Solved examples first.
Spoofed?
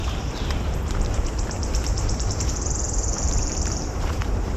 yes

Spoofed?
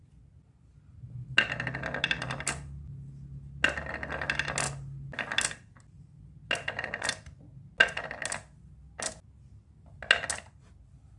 no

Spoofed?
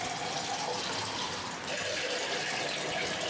yes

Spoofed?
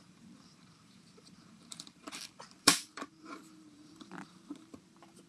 yes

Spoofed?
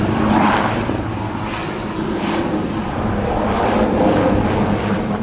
yes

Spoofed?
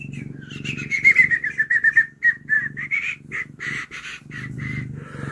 no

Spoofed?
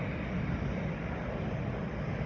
no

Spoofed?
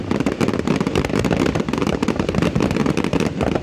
yes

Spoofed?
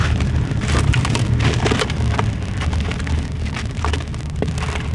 no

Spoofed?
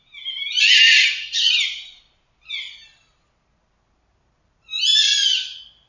no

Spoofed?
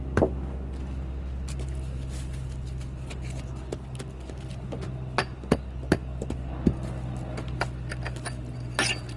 no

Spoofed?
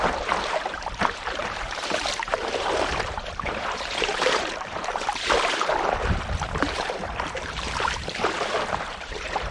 yes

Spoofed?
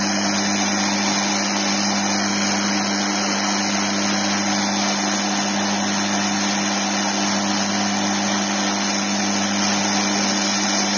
no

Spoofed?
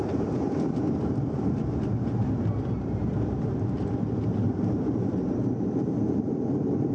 yes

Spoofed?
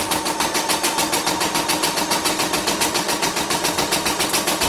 no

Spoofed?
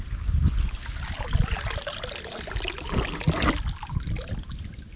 no